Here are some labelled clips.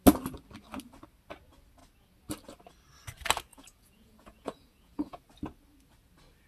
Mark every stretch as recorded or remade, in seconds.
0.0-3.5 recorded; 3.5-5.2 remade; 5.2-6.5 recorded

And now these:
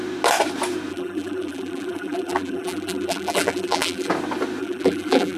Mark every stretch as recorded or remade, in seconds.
0.0-0.9 recorded; 0.9-4.1 remade; 4.1-4.6 recorded; 4.6-5.4 remade

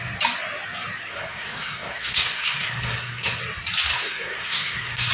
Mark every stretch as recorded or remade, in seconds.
0.0-1.1 recorded; 1.1-3.4 remade; 3.4-3.9 recorded; 3.9-5.1 remade